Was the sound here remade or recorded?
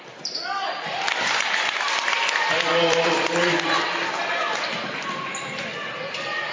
remade